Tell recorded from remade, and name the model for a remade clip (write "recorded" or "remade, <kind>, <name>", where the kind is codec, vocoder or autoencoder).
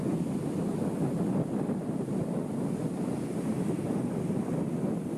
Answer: recorded